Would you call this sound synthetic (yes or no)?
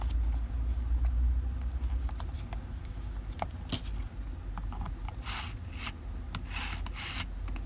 no